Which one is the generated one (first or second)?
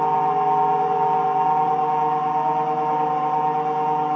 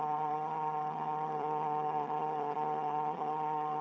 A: second